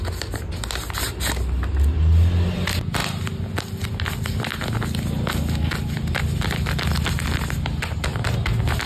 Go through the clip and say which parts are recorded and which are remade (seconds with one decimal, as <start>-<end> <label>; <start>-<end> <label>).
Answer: 0.0-8.9 recorded